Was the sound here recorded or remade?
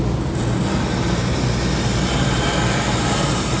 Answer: recorded